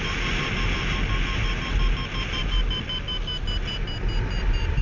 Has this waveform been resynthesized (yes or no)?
no